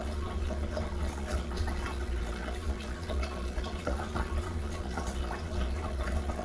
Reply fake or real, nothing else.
fake